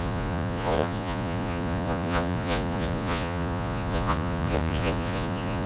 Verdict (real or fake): fake